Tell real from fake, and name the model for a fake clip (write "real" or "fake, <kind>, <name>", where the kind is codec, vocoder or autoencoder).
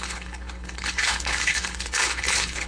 fake, codec, HILCodec